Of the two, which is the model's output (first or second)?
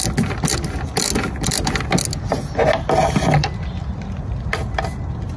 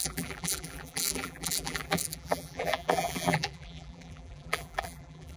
second